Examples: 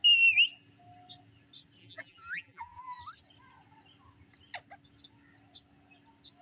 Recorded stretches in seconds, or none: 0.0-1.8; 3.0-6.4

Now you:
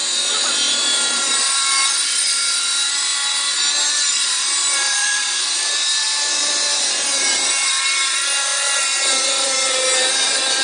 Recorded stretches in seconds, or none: 0.0-1.4; 3.1-3.9

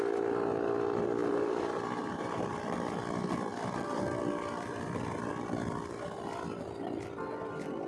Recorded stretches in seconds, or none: 0.0-1.2; 2.6-7.9

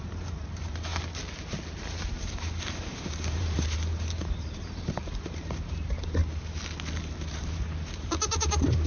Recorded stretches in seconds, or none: 0.9-2.2; 6.2-6.9

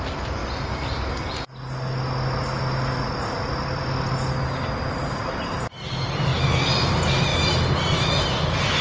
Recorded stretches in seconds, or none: 0.4-4.8; 6.3-6.8; 7.3-8.8

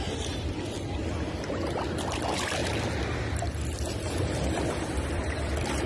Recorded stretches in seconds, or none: 2.6-3.3

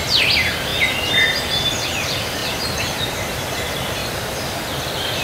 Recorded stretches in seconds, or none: 0.0-2.4; 3.2-4.0